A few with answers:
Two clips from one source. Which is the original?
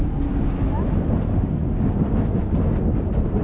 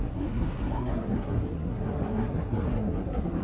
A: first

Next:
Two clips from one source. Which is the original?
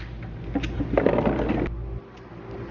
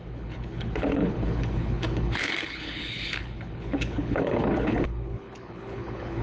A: first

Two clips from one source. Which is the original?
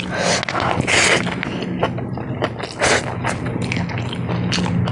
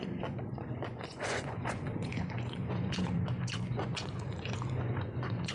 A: first